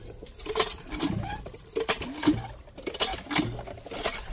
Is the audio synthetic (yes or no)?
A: no